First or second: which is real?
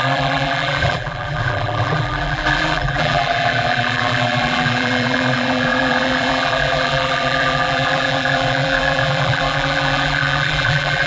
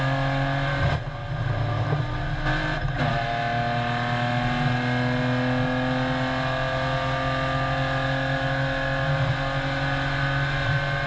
second